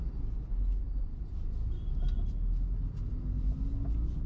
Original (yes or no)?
yes